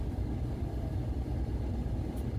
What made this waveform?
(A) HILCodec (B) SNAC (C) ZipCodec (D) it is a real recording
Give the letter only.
D